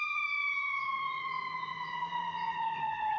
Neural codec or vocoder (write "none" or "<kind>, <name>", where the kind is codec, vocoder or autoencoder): vocoder, Vocos